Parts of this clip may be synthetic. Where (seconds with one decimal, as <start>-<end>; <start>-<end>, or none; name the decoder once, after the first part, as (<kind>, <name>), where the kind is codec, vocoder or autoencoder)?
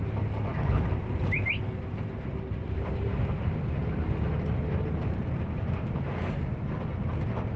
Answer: none